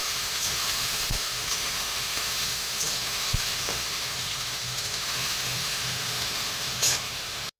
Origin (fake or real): fake